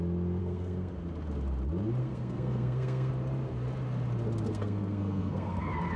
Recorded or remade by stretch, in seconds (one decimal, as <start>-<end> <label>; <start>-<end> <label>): 0.0-0.4 recorded; 0.4-0.9 remade; 0.9-2.0 recorded; 2.0-3.1 remade; 3.1-4.5 recorded; 4.5-6.0 remade